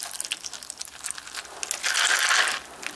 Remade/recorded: recorded